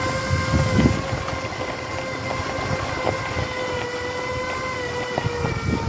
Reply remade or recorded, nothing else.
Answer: recorded